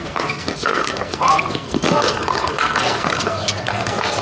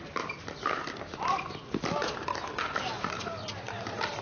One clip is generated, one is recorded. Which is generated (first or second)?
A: first